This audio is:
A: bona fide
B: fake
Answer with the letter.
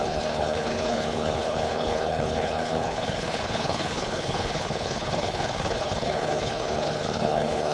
B